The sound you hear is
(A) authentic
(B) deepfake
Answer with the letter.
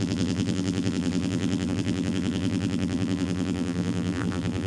B